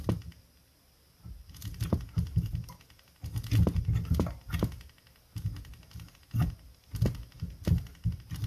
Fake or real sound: real